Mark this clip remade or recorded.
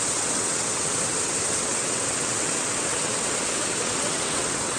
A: remade